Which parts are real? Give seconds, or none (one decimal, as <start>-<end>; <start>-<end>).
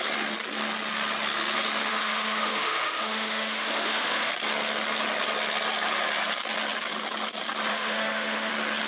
0.0-1.9; 4.3-7.7; 8.5-8.9